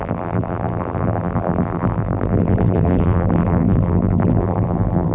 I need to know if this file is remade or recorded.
remade